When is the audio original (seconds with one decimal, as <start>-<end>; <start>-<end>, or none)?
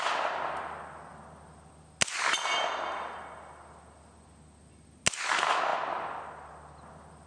0.0-7.3